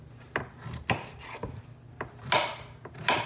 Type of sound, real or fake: real